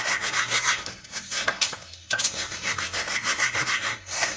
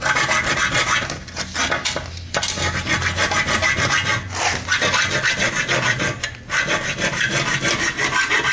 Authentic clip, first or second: second